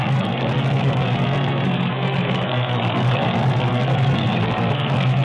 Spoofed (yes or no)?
yes